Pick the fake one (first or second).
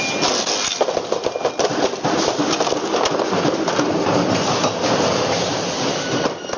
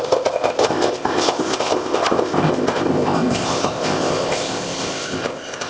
second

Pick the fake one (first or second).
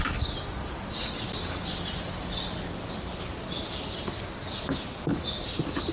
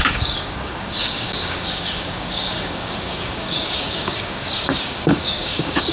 second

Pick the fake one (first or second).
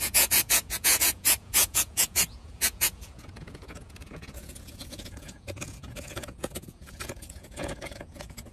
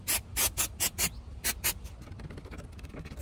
first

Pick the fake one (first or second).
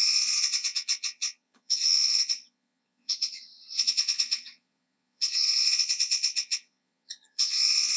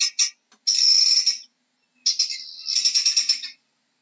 first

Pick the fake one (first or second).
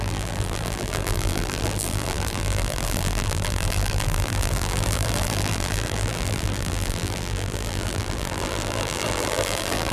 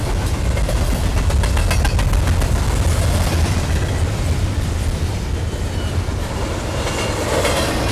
first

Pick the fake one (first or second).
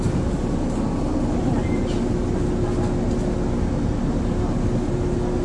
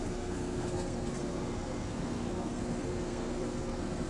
second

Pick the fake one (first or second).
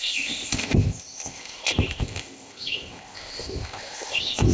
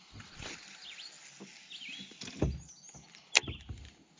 first